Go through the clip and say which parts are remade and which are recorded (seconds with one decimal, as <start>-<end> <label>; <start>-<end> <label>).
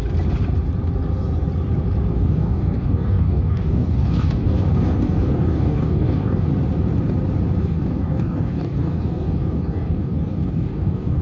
0.0-2.1 recorded; 2.1-6.5 remade; 6.5-7.6 recorded; 7.6-11.2 remade